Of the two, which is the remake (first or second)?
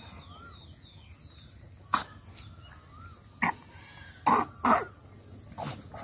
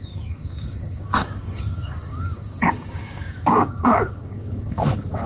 second